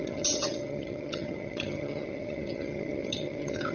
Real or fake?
fake